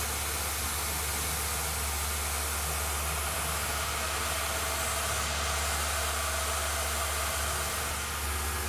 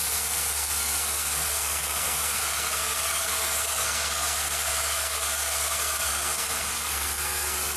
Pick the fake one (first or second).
second